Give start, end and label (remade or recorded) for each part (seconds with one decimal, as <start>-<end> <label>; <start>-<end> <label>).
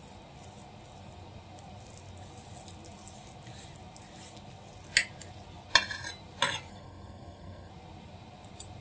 0.0-6.7 recorded; 6.7-7.7 remade; 7.7-8.8 recorded